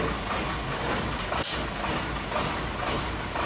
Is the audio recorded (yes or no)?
yes